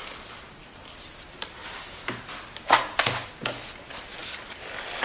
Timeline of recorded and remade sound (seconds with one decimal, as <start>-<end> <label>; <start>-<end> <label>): 0.0-0.6 recorded; 0.6-3.6 remade; 3.6-4.2 recorded; 4.2-5.0 remade